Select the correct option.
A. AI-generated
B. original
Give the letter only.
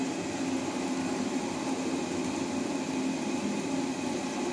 B